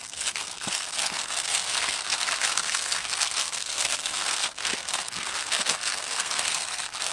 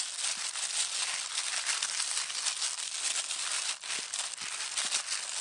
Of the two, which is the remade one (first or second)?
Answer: first